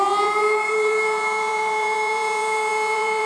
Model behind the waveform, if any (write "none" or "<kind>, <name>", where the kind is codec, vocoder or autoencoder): vocoder, Vocos